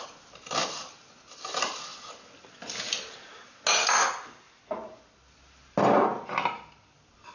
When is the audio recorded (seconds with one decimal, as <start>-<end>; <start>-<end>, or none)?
0.0-7.3